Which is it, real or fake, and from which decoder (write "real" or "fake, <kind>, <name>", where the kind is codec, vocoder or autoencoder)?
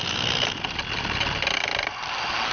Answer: real